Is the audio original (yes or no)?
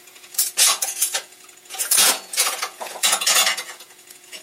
no